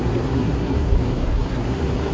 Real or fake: fake